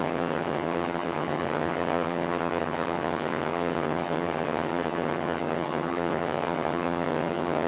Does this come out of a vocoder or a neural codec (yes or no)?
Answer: yes